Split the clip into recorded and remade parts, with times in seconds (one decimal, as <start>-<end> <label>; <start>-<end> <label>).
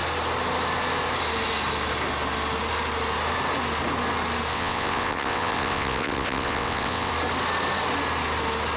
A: 0.0-4.5 recorded; 4.5-7.1 remade; 7.1-8.8 recorded